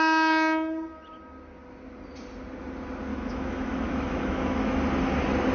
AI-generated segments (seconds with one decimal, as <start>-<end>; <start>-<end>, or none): 3.1-4.8